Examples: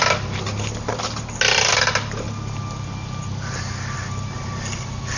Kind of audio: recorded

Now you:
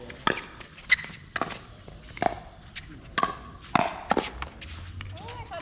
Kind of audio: recorded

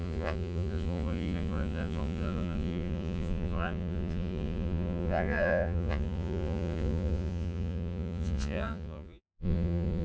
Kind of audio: remade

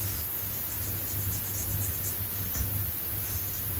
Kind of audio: recorded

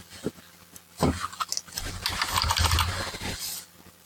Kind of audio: recorded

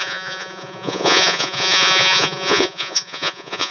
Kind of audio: remade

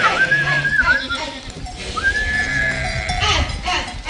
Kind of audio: recorded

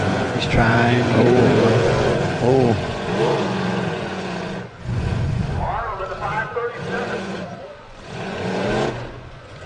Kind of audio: remade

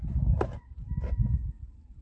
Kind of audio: recorded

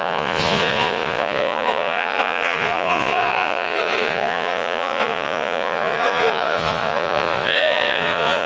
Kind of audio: remade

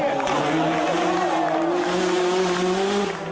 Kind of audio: recorded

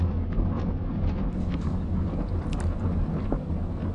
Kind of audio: recorded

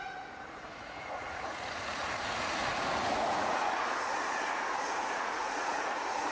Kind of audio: remade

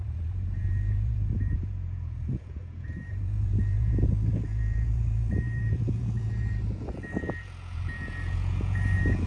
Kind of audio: remade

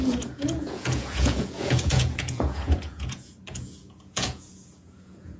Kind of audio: remade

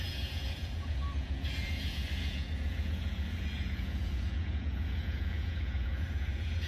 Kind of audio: remade